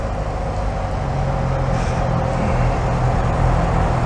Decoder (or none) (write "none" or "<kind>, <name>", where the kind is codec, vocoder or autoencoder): none